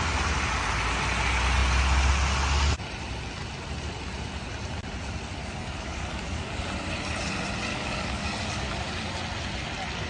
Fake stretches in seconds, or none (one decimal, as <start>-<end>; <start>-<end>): 5.4-6.6; 7.7-8.8